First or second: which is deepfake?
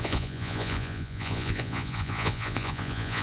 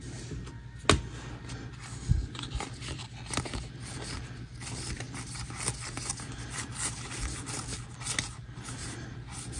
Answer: first